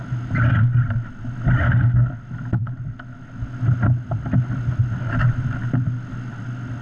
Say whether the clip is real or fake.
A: real